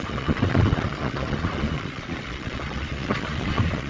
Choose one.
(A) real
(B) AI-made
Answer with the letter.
B